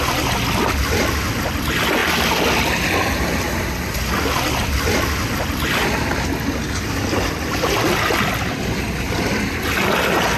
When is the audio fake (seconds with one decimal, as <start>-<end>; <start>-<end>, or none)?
none